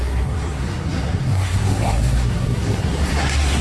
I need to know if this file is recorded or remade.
remade